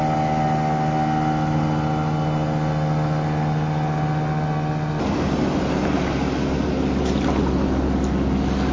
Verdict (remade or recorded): recorded